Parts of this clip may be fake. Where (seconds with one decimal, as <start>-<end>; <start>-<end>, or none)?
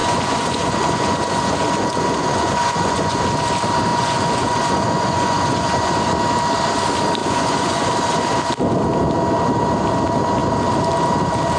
0.0-3.2; 3.9-5.9; 7.2-7.9